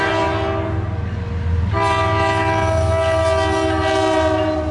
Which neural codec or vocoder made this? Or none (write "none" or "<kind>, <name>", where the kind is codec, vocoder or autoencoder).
none